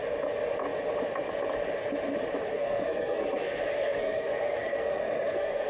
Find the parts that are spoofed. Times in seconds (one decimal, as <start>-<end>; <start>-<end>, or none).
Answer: 2.5-5.7